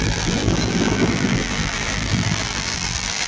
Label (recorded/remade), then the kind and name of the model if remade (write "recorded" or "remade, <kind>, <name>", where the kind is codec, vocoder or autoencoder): remade, vocoder, BigVGAN v2